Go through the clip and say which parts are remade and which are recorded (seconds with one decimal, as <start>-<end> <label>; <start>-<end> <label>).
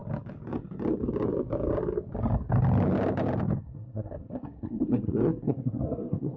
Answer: 0.0-3.6 recorded; 3.6-6.4 remade